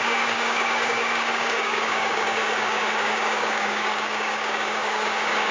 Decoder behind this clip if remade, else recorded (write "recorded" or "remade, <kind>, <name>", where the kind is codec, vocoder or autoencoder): remade, codec, DAC